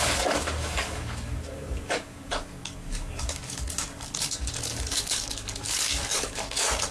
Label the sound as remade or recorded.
remade